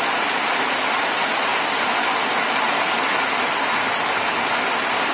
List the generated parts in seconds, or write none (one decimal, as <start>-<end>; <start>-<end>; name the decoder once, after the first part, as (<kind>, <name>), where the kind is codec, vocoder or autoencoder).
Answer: none